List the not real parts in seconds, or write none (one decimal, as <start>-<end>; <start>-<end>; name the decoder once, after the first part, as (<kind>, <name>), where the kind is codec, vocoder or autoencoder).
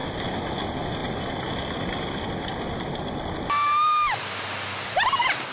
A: none